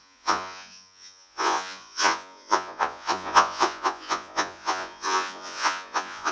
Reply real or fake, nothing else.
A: fake